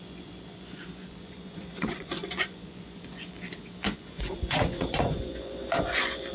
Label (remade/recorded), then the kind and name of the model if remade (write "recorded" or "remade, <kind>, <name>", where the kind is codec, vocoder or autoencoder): remade, vocoder, Vocos